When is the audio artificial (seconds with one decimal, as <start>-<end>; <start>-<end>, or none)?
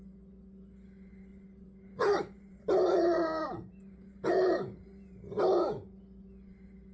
1.3-5.4